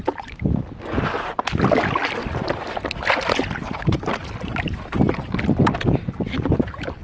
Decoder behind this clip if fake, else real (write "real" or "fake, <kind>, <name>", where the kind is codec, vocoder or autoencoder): real